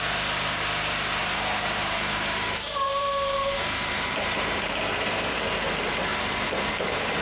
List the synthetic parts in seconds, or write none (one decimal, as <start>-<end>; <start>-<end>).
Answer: 1.2-4.8; 6.1-7.2